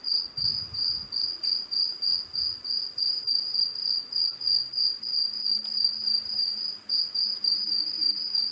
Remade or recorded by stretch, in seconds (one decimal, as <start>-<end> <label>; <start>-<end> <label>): 0.0-4.6 remade; 4.6-5.5 recorded; 5.5-6.5 remade; 6.5-7.3 recorded; 7.3-8.5 remade